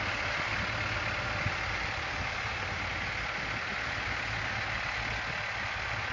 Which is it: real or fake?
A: real